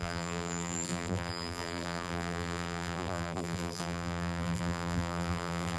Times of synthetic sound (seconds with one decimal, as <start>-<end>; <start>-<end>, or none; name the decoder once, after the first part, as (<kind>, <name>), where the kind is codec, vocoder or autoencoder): 0.0-5.8 (vocoder, BigVGAN v2)